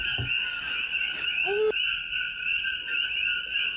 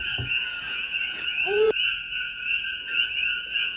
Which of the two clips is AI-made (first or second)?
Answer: second